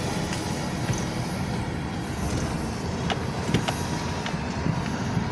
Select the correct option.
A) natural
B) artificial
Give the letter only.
A